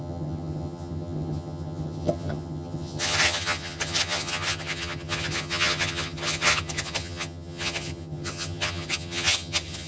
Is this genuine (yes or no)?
no